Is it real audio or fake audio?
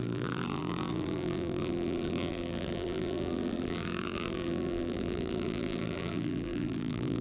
fake